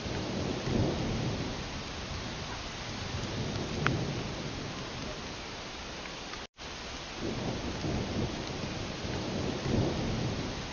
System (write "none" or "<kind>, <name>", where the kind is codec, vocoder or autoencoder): none